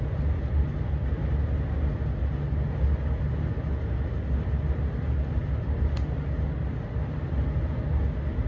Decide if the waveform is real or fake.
real